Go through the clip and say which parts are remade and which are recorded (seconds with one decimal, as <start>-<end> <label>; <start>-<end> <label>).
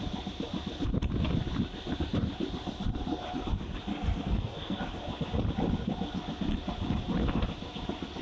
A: 0.0-3.9 recorded; 3.9-4.8 remade; 4.8-8.2 recorded